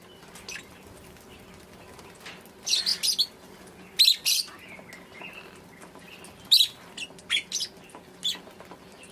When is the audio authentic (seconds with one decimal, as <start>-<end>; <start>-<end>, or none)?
0.0-9.1